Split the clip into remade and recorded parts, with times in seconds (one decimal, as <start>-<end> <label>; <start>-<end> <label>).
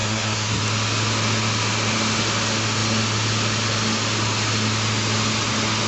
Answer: 0.0-0.6 remade; 0.6-5.9 recorded